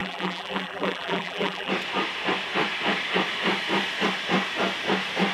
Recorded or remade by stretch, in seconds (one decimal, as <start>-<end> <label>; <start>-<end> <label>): 0.0-1.7 remade; 1.7-5.3 recorded